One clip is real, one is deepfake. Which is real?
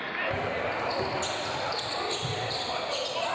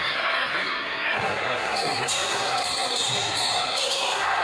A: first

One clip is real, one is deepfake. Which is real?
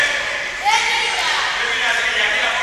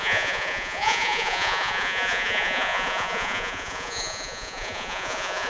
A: first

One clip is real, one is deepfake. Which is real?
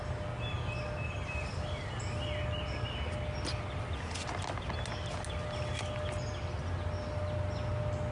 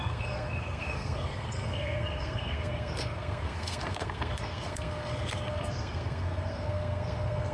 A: first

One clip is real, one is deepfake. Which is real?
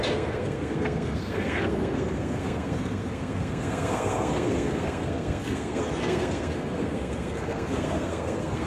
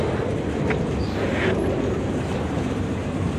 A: second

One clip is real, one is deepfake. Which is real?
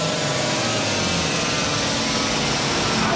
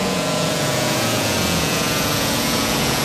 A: first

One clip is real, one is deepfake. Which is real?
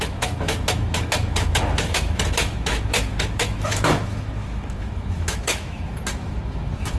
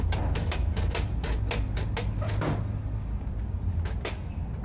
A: second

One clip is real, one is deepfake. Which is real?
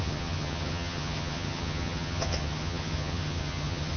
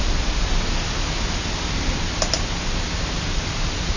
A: second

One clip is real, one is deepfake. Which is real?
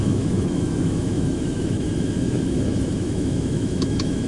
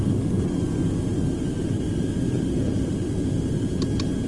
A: second